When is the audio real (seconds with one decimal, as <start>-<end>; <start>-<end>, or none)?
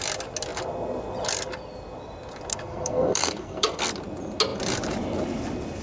0.0-2.5; 3.9-5.8